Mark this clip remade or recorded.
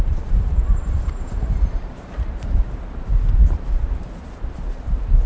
remade